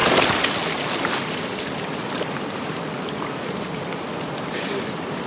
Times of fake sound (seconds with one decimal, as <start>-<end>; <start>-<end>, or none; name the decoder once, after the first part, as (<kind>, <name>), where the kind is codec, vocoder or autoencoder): 0.0-5.3 (vocoder, BigVGAN v2)